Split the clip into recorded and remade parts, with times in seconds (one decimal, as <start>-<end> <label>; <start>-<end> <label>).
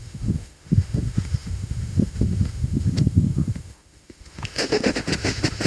0.0-5.7 remade